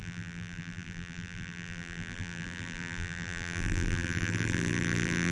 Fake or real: fake